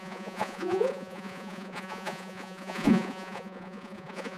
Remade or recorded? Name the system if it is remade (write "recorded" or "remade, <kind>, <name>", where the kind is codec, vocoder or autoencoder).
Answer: remade, vocoder, Vocos